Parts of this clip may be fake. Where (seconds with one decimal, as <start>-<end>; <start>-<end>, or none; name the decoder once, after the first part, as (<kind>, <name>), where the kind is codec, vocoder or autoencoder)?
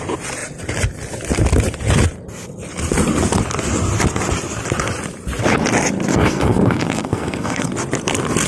6.1-7.7 (codec, SNAC)